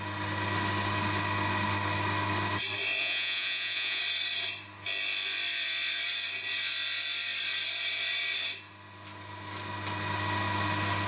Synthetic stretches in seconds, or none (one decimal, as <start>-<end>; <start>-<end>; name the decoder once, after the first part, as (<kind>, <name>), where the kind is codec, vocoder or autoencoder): 3.0-4.0 (vocoder, Vocos)